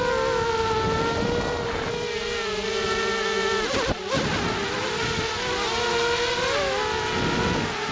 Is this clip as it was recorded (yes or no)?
yes